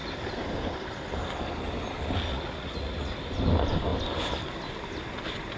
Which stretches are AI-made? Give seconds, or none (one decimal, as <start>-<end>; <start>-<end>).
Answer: 2.3-3.1